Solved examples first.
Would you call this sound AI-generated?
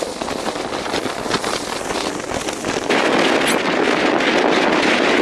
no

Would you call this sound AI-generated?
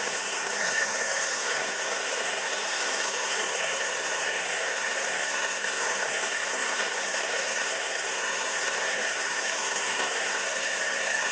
yes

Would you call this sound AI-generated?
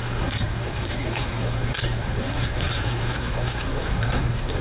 yes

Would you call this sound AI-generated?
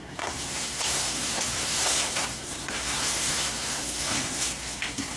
yes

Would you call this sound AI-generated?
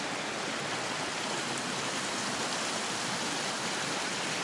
no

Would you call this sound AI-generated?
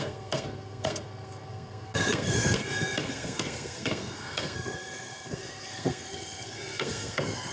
yes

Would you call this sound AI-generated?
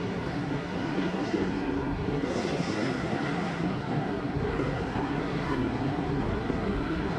yes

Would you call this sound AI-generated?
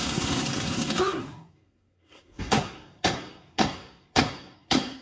yes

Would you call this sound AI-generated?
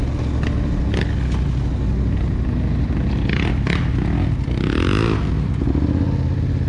no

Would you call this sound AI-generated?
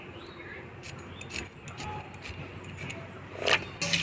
no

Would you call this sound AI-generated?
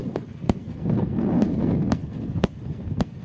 yes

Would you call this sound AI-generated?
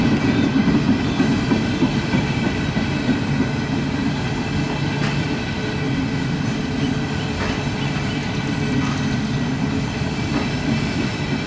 no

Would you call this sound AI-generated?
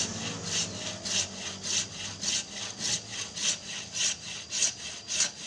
no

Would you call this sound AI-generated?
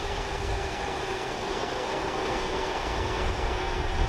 yes